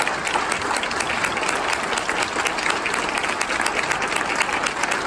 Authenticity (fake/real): real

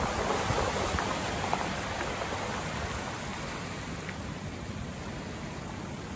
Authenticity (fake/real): real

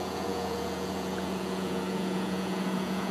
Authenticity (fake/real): fake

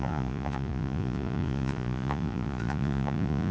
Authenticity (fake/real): fake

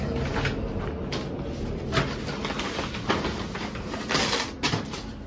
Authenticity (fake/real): real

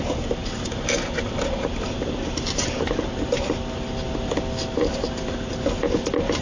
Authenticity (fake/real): real